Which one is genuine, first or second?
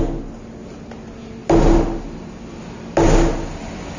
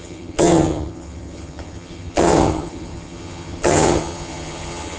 first